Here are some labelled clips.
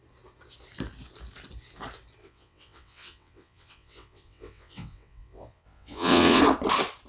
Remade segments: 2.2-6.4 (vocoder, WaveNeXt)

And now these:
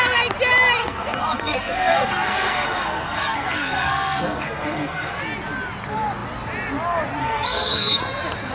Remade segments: 0.8-5.1 (codec, SNAC); 7.2-8.0

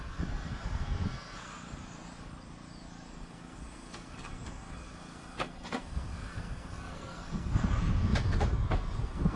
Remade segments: 0.0-1.5 (codec, SNAC); 3.1-9.4

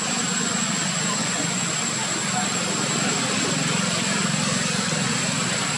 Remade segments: 1.2-1.7 (vocoder, Vocos)

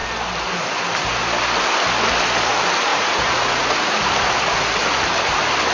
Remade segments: 2.9-4.1 (vocoder, Vocos)

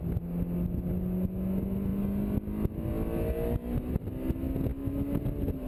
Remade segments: 4.7-5.2 (autoencoder, DAC-VAE)

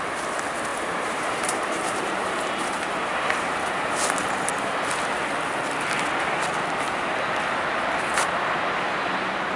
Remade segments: 0.7-4.5 (vocoder, BigVGAN v2)